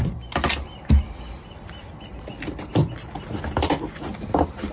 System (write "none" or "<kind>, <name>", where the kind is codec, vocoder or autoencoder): none